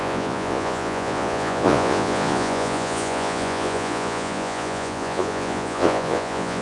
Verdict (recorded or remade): remade